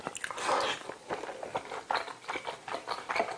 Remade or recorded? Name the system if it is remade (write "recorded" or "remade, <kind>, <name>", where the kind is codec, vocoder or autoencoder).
recorded